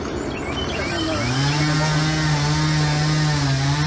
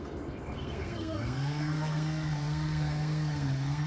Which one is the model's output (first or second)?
second